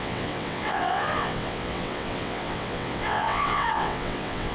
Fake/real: fake